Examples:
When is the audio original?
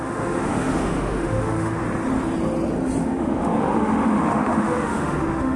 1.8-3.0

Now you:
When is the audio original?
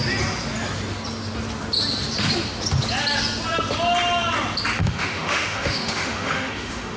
0.0-4.8